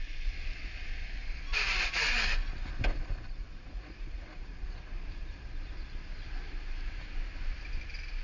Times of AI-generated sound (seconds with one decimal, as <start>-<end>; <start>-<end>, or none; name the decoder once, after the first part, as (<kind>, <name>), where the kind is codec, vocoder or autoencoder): 3.4-4.9 (vocoder, Vocos)